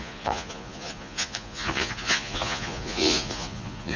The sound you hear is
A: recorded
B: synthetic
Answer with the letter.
B